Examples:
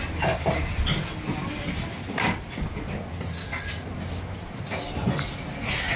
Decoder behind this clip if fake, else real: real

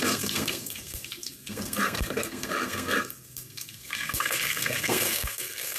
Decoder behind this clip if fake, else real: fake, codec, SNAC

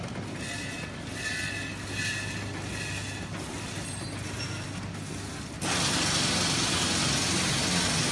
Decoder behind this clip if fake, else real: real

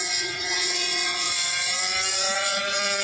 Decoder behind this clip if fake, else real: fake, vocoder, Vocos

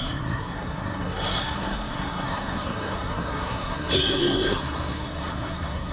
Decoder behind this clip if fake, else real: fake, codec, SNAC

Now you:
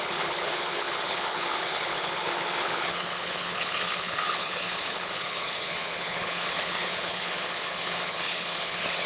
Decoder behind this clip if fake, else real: fake, codec, HILCodec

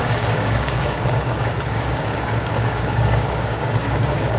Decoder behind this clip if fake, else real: fake, codec, DAC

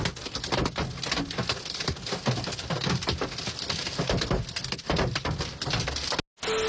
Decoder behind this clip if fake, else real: real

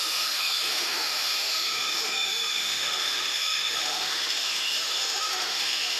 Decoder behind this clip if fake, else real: fake, autoencoder, DAC-VAE